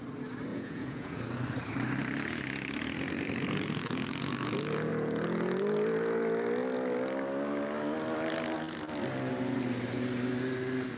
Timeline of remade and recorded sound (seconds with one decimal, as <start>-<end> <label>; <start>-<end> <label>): 0.0-0.5 recorded; 0.5-1.2 remade; 1.2-11.0 recorded